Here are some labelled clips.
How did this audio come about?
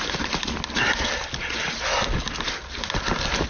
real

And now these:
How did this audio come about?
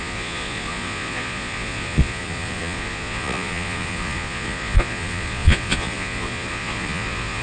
fake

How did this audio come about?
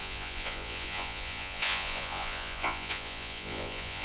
fake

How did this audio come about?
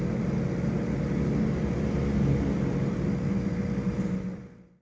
real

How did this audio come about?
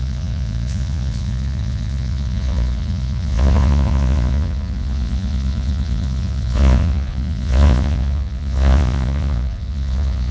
fake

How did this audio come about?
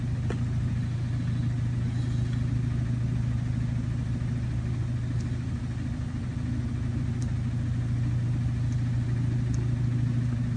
real